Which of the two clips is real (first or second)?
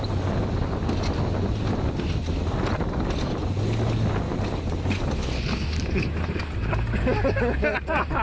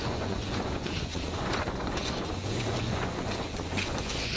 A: first